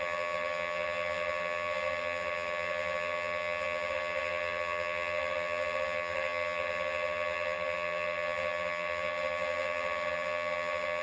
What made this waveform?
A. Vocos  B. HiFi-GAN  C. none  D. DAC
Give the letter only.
B